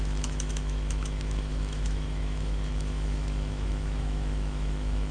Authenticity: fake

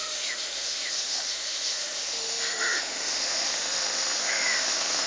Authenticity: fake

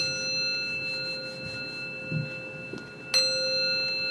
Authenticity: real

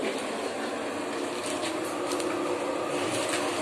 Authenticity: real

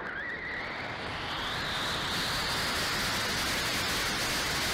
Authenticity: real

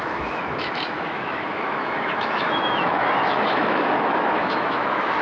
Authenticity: fake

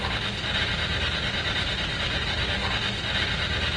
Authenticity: real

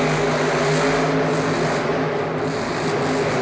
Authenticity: real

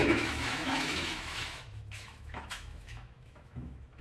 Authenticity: fake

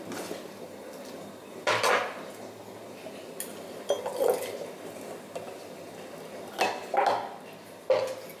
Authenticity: real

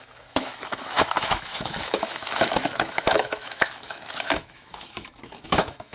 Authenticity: fake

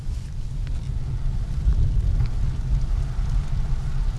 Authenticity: real